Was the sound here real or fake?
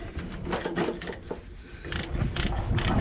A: real